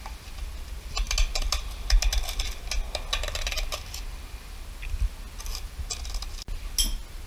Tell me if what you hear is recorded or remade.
recorded